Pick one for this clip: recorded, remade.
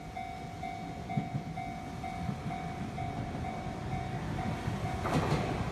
recorded